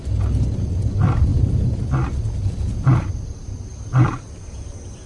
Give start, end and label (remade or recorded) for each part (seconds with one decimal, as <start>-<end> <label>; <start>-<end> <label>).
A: 0.0-1.3 recorded; 1.3-1.8 remade; 1.8-5.1 recorded